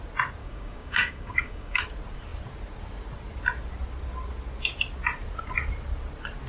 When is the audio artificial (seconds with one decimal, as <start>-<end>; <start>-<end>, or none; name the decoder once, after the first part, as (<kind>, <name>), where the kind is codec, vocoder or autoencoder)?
0.4-1.8 (codec, DAC)